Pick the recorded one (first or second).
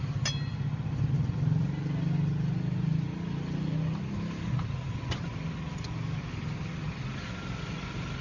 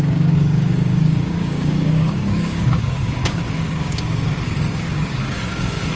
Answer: first